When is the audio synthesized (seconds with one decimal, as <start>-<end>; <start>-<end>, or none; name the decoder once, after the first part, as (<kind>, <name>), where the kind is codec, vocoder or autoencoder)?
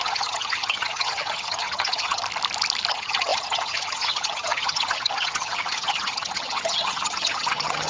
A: 0.0-2.2 (vocoder, HiFi-GAN); 2.9-7.9